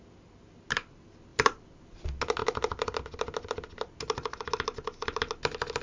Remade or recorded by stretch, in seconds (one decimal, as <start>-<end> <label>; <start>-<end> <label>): 0.0-1.3 recorded; 1.3-1.8 remade; 1.8-2.4 recorded; 2.4-3.0 remade; 3.0-5.8 recorded